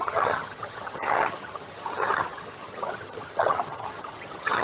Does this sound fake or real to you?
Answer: fake